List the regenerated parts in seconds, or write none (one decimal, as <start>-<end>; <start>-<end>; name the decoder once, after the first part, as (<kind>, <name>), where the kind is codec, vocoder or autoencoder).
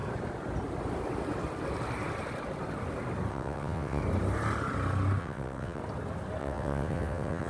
3.3-4.0 (vocoder, WaveNeXt); 5.2-5.8; 6.4-7.5